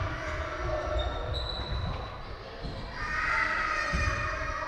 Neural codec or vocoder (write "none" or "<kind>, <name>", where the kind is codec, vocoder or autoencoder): none